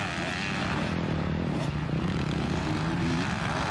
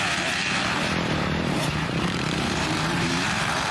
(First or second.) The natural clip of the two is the first